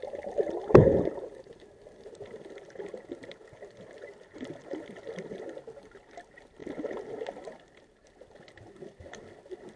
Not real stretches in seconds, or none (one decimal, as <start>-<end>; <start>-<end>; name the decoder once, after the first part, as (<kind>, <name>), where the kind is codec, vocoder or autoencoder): none